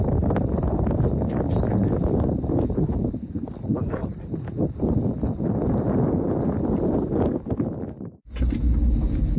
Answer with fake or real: real